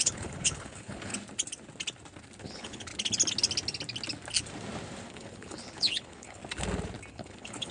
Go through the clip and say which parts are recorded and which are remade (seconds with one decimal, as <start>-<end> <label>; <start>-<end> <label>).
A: 0.0-1.1 remade; 1.1-2.4 recorded; 2.4-2.9 remade; 2.9-5.1 recorded; 5.1-6.4 remade; 6.4-7.1 recorded; 7.1-7.7 remade